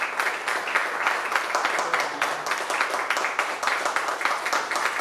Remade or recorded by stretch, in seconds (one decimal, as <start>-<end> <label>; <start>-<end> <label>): 0.0-5.0 recorded